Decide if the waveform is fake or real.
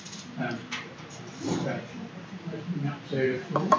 fake